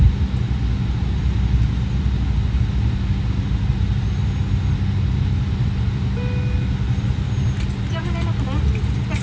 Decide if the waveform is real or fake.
real